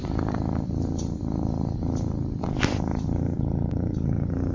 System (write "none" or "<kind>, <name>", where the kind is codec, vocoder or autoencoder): none